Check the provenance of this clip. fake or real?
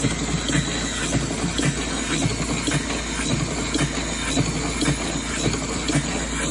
real